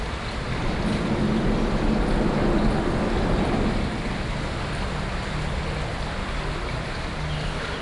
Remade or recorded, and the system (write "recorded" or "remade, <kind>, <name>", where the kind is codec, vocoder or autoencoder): recorded